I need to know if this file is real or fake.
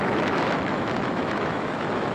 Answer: fake